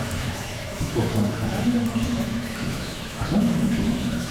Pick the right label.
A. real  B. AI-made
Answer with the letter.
B